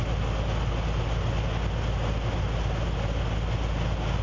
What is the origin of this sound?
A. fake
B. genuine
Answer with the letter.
B